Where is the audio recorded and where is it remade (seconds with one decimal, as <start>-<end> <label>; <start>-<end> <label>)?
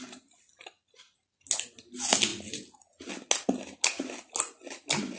0.0-5.2 recorded